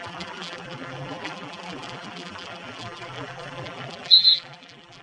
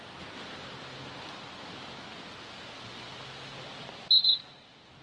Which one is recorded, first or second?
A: second